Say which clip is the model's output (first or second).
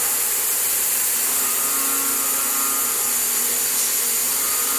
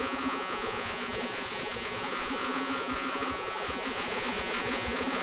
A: second